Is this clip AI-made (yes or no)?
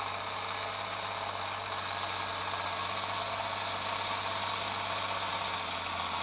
no